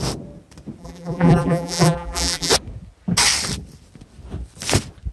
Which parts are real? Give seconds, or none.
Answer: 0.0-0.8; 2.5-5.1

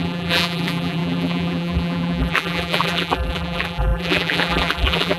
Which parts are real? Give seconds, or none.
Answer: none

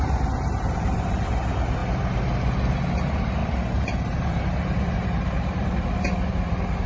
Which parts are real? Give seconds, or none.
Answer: 1.8-2.9

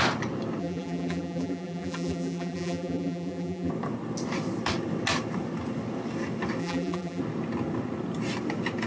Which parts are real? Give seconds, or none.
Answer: 0.0-0.6; 3.7-6.6; 7.2-8.9

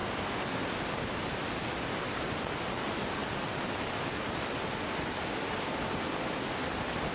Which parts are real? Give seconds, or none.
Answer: 1.9-7.1

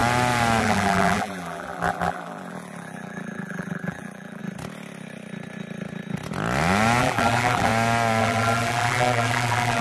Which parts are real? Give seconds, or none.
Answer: 0.0-0.6; 4.4-7.0; 7.7-8.2